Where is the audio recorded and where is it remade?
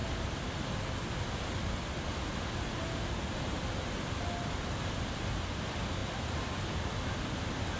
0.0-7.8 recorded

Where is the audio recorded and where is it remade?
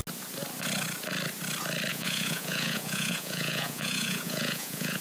0.0-1.9 recorded; 1.9-5.0 remade